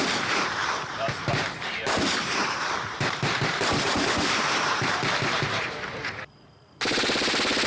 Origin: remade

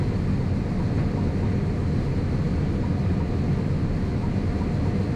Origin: recorded